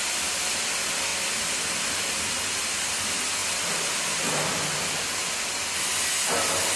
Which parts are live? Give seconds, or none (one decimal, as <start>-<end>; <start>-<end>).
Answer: 0.0-6.8